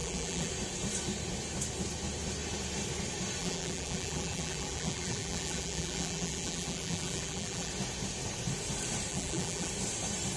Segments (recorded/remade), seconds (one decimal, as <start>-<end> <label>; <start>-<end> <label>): 0.0-0.5 remade; 0.5-3.4 recorded; 3.4-7.7 remade; 7.7-9.1 recorded; 9.1-9.7 remade; 9.7-10.4 recorded